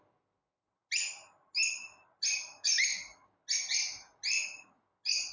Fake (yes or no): no